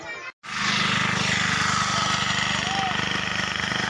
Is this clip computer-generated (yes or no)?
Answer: no